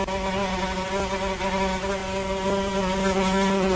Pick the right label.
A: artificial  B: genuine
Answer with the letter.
B